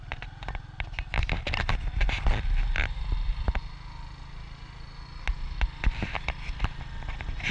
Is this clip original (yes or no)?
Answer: yes